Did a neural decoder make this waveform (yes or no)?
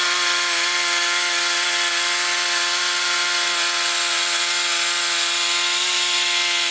no